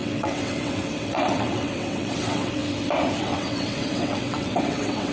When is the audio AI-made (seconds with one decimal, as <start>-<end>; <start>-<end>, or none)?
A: 0.0-2.6; 3.2-5.1